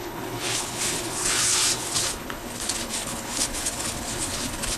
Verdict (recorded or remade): remade